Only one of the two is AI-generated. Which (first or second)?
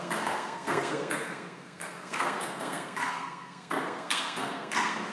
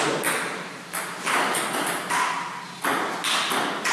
first